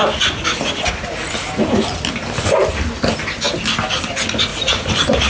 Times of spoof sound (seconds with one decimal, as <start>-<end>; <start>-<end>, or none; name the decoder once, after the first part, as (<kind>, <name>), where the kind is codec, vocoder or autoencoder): 4.5-5.3 (vocoder, BigVGAN v2)